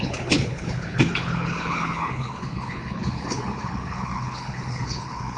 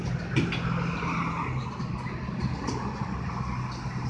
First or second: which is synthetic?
first